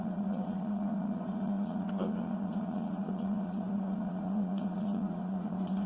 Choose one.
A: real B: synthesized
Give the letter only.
B